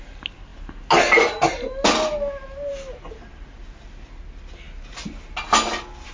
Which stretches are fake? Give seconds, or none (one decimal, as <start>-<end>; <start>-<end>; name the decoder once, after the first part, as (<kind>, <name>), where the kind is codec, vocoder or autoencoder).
none